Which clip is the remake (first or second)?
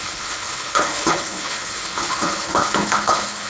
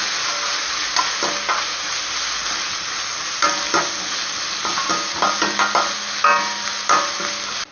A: first